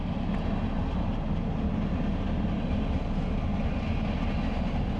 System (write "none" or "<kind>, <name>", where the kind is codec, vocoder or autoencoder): none